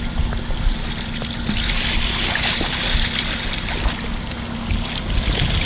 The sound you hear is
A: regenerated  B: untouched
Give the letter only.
B